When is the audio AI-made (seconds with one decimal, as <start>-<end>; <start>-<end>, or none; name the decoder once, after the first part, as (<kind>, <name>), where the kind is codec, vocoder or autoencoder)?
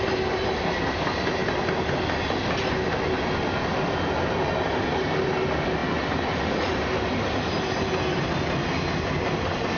none